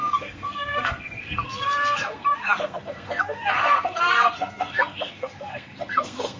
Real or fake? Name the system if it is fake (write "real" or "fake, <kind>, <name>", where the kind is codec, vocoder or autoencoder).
fake, codec, SNAC